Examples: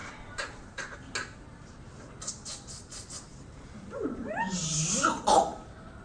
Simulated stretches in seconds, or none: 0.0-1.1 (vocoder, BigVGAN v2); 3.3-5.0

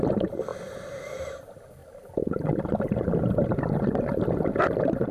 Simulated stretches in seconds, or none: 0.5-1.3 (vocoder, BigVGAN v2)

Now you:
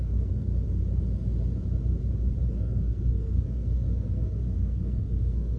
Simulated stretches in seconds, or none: 0.0-0.5 (codec, SNAC); 2.5-5.6

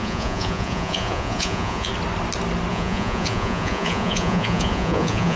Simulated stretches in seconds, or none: 0.0-1.9 (vocoder, Vocos); 2.7-5.4